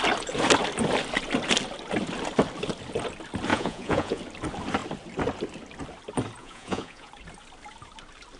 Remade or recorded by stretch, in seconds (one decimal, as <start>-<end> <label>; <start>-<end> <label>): 0.0-3.5 recorded; 3.5-4.2 remade; 4.2-6.4 recorded; 6.4-7.1 remade; 7.1-8.4 recorded